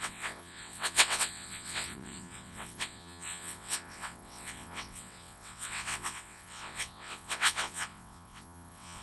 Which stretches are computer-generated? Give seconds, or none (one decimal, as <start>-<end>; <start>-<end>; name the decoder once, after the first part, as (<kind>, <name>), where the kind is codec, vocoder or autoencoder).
0.0-9.0 (vocoder, WaveNeXt)